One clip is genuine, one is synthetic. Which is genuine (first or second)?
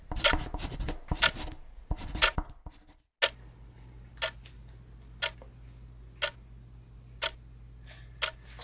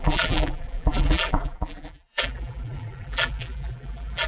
first